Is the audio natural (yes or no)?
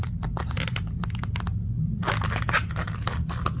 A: yes